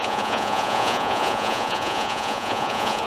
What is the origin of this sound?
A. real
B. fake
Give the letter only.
B